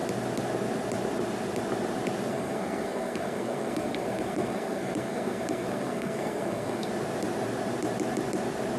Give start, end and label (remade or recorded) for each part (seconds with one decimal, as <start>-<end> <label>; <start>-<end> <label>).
0.0-2.3 recorded; 2.3-6.9 remade; 6.9-8.8 recorded